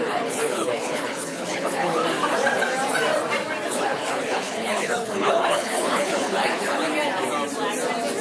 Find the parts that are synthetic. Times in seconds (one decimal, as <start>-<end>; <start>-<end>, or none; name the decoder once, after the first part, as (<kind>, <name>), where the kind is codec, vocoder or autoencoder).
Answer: 0.0-2.0 (codec, HILCodec); 3.7-6.9